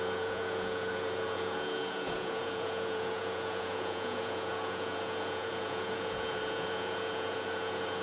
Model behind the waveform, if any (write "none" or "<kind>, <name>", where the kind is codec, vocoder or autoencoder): vocoder, Vocos